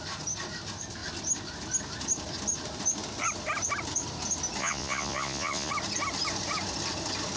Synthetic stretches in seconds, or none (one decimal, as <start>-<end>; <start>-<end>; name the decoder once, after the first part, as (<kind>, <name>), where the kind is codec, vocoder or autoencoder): 4.6-5.7 (vocoder, Vocos)